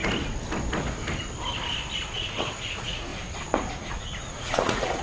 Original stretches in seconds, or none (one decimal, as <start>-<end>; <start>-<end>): 0.0-2.1; 3.1-3.7